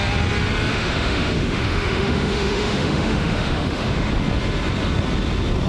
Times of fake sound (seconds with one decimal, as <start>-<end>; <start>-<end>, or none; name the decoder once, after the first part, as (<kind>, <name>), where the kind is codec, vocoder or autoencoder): 0.7-4.1 (autoencoder, DAC-VAE)

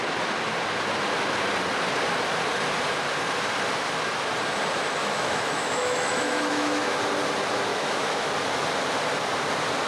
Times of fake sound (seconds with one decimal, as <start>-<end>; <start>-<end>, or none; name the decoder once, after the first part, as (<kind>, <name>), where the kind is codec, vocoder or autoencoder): 5.0-7.0 (autoencoder, DAC-VAE); 7.7-8.3

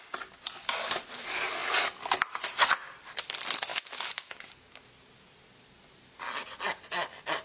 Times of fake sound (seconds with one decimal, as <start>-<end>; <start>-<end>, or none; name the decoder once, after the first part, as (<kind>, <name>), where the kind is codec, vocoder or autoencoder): 3.7-4.4 (autoencoder, DAC-VAE)

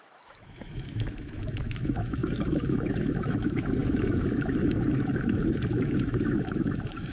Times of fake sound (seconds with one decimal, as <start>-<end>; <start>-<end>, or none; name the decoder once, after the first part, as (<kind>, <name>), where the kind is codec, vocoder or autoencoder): 0.0-7.1 (autoencoder, DAC-VAE)

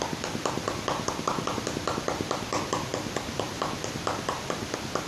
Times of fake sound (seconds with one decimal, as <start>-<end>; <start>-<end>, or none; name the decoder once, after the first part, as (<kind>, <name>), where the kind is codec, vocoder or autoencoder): none

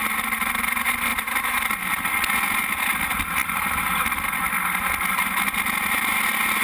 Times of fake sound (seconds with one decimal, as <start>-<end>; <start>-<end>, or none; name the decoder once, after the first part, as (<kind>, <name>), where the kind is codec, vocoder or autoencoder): none

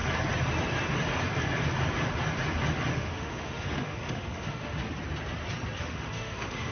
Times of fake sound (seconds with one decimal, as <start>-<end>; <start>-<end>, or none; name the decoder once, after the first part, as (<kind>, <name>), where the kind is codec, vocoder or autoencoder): 2.9-4.8 (autoencoder, DAC-VAE); 5.8-6.7